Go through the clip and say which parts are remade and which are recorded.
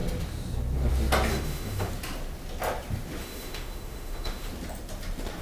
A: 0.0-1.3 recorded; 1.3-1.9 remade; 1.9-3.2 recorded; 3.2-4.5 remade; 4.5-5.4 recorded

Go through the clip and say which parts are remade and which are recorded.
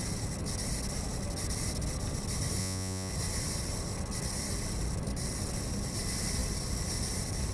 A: 0.0-2.6 recorded; 2.6-3.1 remade; 3.1-7.5 recorded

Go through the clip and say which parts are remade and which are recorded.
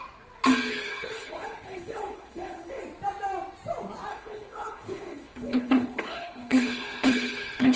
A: 0.0-0.7 recorded; 0.7-2.8 remade; 2.8-4.1 recorded; 4.1-7.8 remade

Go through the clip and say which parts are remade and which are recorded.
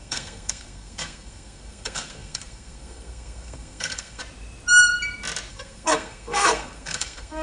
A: 0.0-4.2 remade; 4.2-5.5 recorded; 5.5-7.4 remade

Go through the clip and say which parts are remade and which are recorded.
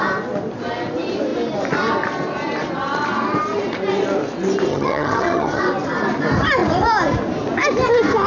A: 0.0-4.7 recorded; 4.7-5.6 remade; 5.6-8.3 recorded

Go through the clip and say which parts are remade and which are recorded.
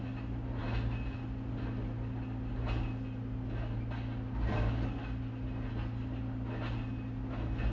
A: 0.0-7.7 recorded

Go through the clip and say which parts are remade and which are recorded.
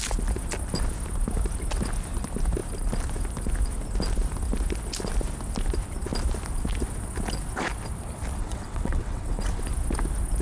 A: 0.0-8.4 recorded; 8.4-9.6 remade; 9.6-10.4 recorded